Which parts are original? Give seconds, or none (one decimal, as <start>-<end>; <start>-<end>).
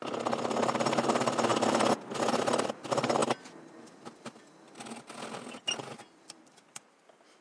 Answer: 0.0-7.4